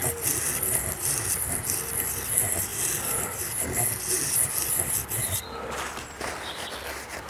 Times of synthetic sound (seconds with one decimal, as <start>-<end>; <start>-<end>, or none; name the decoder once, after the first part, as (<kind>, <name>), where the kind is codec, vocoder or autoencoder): none